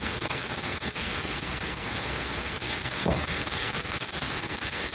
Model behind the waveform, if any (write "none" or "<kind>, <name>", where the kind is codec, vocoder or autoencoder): codec, SNAC